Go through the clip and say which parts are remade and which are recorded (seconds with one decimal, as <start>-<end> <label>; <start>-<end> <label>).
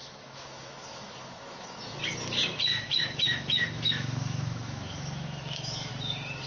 0.0-2.0 remade; 2.0-2.7 recorded; 2.7-5.9 remade; 5.9-6.5 recorded